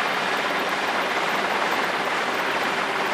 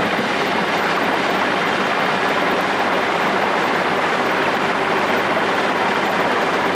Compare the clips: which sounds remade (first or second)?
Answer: first